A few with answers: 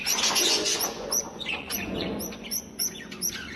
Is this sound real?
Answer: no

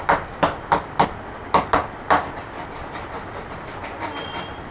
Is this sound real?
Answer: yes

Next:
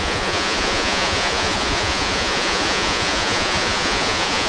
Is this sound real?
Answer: no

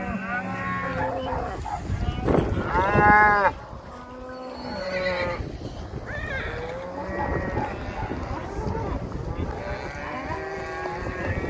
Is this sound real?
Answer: yes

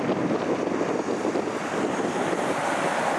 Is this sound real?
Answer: yes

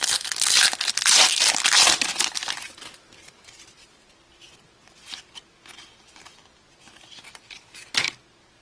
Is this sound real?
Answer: yes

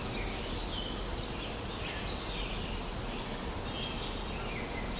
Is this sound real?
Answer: yes